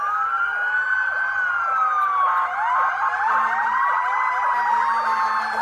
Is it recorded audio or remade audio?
recorded